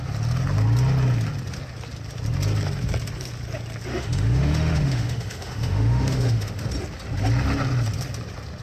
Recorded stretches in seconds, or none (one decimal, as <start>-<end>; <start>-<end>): 0.0-3.9; 6.5-8.6